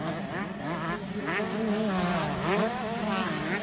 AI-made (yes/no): no